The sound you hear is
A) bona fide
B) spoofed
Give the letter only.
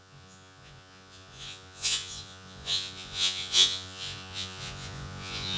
B